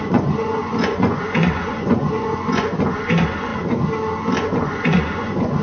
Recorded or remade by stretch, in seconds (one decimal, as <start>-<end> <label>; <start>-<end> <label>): 0.0-3.5 remade; 3.5-4.6 recorded; 4.6-5.6 remade

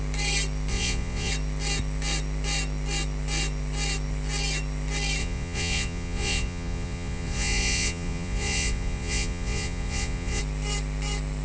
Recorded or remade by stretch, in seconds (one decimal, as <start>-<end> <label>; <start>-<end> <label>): 0.0-0.7 recorded; 0.7-1.3 remade; 1.3-5.2 recorded; 5.2-10.4 remade; 10.4-11.4 recorded